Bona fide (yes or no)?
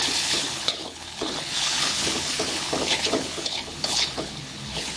no